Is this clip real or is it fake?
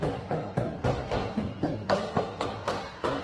fake